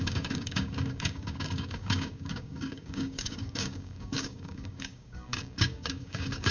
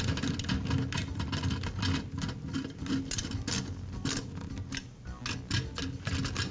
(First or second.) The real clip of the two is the second